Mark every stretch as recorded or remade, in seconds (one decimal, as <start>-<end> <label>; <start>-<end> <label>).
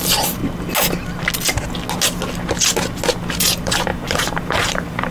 0.0-0.4 remade; 0.4-3.3 recorded; 3.3-5.1 remade